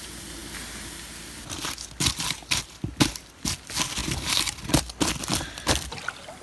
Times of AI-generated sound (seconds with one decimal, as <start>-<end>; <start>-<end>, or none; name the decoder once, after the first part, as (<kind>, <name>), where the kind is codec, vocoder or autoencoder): none